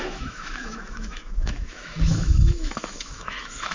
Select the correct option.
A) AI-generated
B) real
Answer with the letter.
A